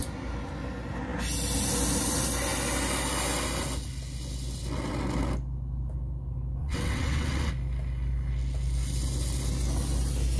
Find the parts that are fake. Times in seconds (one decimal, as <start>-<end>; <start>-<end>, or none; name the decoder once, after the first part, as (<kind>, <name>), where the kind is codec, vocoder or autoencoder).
6.6-7.5 (vocoder, WaveNeXt)